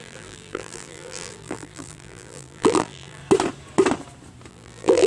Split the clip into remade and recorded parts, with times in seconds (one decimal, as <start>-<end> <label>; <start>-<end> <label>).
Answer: 0.0-3.2 remade; 3.2-4.5 recorded; 4.5-5.1 remade